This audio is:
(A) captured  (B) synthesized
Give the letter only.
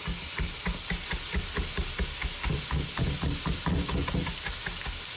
A